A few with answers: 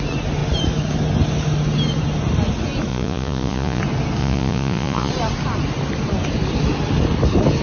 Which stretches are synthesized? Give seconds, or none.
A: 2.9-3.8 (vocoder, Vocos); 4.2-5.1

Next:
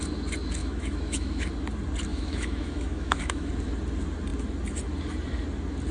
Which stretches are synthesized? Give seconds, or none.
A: 0.6-1.5 (autoencoder, DAC-VAE); 2.1-3.5

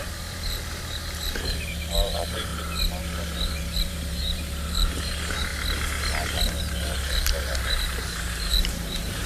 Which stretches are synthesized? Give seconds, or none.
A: 0.0-2.5 (vocoder, BigVGAN v2); 3.2-5.5; 6.6-9.3